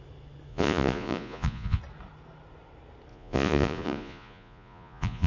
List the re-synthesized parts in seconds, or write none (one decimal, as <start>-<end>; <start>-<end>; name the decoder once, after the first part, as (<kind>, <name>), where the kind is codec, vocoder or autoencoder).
0.5-1.8 (vocoder, Vocos); 3.1-5.3